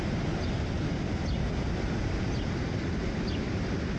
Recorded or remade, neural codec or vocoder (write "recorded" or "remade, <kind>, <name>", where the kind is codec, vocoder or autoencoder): recorded